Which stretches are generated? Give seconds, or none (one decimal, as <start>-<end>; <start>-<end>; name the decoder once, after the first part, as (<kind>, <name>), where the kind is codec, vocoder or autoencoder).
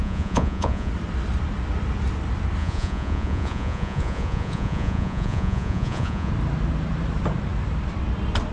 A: 0.0-0.9 (vocoder, Vocos); 2.6-6.3